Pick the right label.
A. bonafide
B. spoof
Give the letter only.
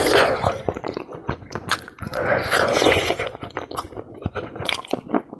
B